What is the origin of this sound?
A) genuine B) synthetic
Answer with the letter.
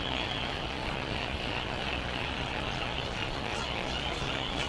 B